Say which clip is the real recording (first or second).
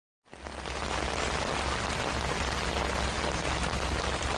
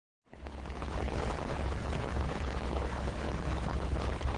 first